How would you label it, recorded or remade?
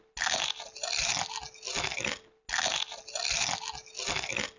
recorded